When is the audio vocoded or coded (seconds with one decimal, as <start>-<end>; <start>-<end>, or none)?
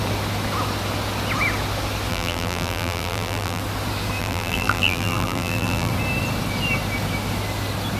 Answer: 2.1-3.6; 4.2-5.9